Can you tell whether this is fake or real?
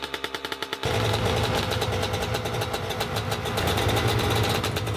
real